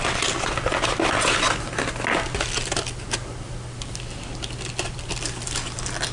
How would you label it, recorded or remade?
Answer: recorded